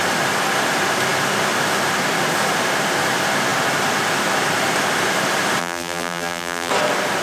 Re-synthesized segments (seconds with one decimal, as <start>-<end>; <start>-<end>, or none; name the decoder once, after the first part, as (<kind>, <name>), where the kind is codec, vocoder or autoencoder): 5.6-6.7 (vocoder, BigVGAN v2)